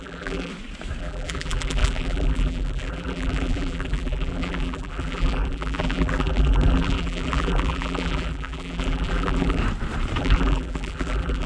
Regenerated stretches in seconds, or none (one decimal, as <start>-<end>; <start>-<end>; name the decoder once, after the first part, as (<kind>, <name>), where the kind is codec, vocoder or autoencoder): 0.0-0.5 (vocoder, BigVGAN v2); 1.0-9.6; 10.2-11.5